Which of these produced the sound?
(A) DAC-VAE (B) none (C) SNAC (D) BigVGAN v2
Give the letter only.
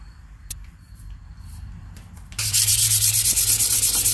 D